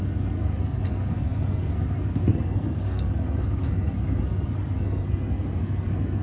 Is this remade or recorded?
remade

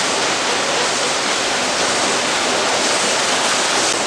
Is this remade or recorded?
recorded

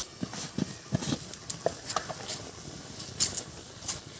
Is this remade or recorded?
recorded